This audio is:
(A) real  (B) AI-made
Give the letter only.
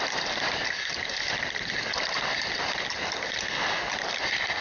A